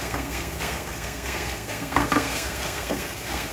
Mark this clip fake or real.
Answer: fake